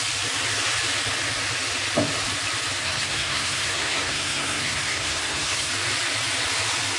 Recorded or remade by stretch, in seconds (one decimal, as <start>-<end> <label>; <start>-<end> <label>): 0.0-2.8 recorded; 2.8-5.7 remade; 5.7-7.0 recorded